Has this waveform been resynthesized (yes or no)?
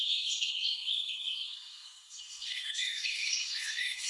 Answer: yes